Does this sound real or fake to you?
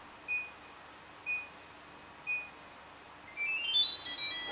real